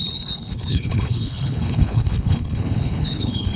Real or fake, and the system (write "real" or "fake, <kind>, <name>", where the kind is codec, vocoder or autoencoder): fake, codec, HILCodec